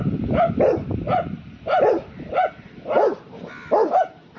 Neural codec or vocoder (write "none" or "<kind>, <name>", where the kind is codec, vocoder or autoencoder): vocoder, BigVGAN v2